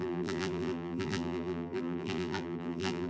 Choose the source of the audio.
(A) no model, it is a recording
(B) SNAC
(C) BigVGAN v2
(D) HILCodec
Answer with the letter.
C